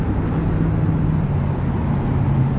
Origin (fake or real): fake